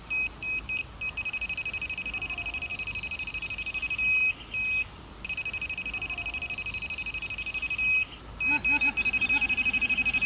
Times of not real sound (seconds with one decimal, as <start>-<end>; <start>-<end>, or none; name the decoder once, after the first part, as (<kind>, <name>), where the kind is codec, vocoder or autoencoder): none